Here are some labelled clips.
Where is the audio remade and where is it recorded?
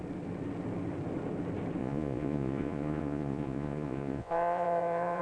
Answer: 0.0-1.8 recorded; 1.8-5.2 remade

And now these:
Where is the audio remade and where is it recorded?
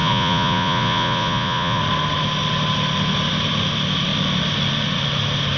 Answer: 0.0-1.8 remade; 1.8-5.6 recorded